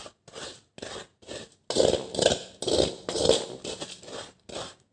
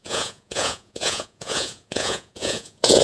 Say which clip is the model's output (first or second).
second